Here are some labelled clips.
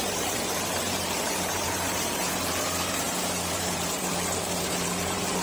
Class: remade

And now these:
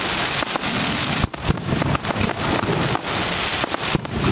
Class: recorded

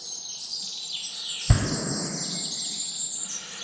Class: recorded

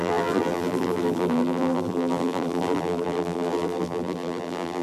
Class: remade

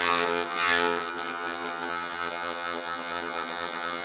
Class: remade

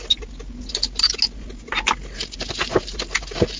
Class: recorded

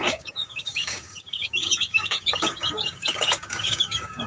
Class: remade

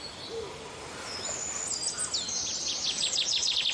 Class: recorded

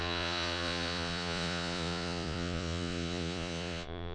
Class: remade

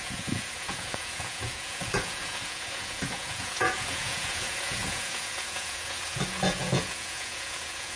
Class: remade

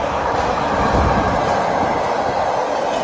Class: recorded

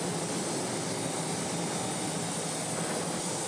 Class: recorded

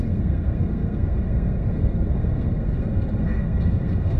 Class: remade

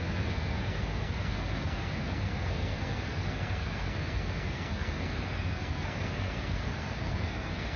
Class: remade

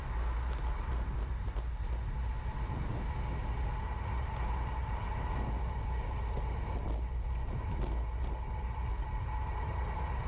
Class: recorded